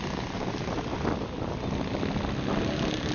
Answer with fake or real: real